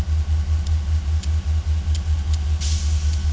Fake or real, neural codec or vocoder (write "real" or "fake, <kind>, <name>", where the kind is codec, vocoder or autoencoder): real